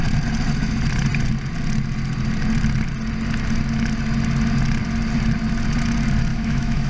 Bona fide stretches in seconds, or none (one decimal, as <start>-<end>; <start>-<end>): 0.0-6.3